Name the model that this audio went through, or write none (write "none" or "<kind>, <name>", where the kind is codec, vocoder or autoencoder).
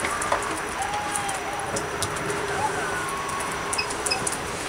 vocoder, BigVGAN v2